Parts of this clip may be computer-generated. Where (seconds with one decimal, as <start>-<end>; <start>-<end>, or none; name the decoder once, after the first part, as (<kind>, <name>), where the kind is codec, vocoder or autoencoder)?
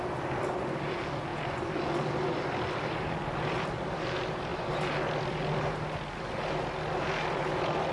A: none